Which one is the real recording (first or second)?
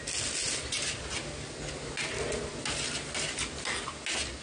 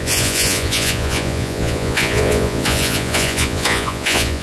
first